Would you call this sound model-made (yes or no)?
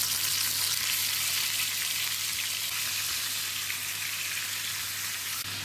no